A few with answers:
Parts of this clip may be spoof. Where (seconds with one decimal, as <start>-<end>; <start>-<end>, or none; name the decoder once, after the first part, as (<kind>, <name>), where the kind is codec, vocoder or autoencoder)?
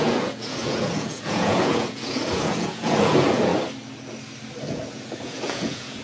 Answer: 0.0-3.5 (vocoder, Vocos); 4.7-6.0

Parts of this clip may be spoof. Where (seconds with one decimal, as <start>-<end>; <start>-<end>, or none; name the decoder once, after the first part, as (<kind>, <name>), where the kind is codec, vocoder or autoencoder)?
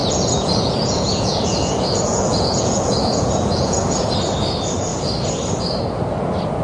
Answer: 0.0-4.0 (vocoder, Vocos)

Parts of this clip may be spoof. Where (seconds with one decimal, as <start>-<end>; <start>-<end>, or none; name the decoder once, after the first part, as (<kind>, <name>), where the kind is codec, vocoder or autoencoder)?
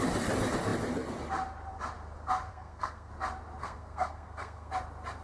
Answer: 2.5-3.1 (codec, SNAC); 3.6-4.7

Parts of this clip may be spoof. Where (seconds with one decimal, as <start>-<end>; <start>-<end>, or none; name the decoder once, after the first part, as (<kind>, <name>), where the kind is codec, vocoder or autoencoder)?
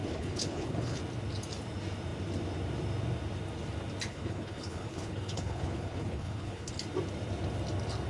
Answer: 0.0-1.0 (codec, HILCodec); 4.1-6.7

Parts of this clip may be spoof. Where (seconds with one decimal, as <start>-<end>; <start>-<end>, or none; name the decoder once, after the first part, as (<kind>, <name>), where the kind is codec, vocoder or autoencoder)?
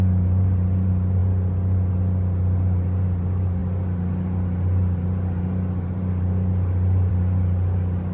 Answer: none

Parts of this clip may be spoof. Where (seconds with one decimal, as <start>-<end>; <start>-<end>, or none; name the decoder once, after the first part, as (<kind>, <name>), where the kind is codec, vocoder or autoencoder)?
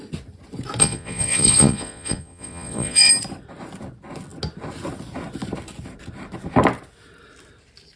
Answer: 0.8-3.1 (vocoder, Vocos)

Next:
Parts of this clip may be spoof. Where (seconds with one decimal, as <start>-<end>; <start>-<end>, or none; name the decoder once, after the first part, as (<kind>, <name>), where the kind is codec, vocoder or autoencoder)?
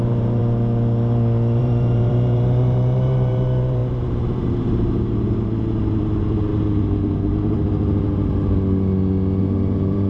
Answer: 0.0-0.4 (vocoder, BigVGAN v2); 1.6-6.5; 9.4-10.1